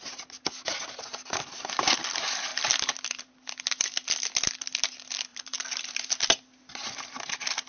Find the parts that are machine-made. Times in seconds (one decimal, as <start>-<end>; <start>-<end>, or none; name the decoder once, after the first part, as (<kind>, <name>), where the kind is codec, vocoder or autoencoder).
2.5-3.2 (vocoder, BigVGAN v2); 5.3-6.0